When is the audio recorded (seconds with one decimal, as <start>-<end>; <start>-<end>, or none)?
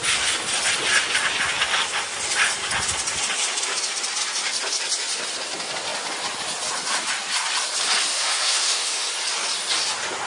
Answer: 0.0-8.1; 9.1-10.3